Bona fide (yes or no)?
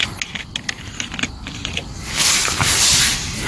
yes